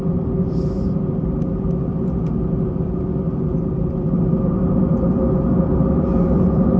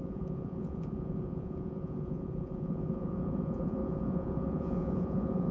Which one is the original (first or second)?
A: first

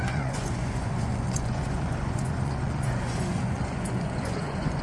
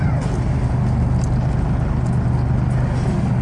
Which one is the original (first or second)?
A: second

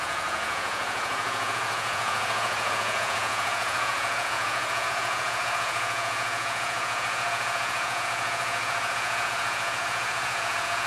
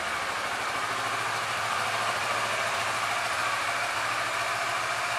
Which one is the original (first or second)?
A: second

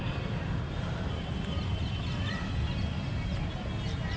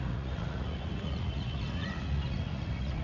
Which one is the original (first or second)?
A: first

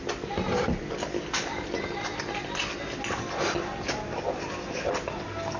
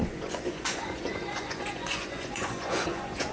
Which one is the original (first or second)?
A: first